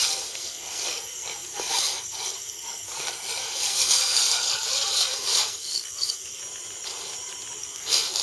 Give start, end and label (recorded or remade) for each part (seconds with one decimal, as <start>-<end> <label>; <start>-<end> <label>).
0.0-6.4 remade; 6.4-7.6 recorded; 7.6-8.2 remade